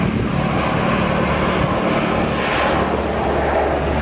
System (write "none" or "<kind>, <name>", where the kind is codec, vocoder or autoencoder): none